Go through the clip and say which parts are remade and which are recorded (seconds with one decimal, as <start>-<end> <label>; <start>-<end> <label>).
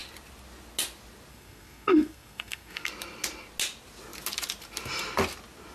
0.0-1.3 recorded; 1.3-2.9 remade; 2.9-5.7 recorded